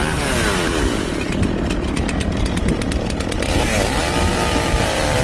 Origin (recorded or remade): recorded